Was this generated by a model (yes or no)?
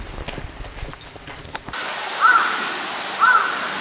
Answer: no